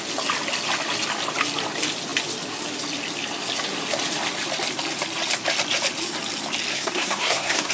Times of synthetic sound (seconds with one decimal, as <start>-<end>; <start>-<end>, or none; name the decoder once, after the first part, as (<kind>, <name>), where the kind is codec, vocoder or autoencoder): 6.7-7.7 (codec, SNAC)